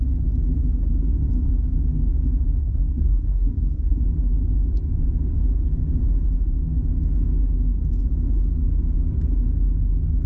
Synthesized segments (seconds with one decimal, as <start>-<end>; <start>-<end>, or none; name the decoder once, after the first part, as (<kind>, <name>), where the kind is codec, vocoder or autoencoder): 2.6-4.0 (codec, SNAC)